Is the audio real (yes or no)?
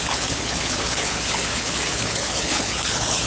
no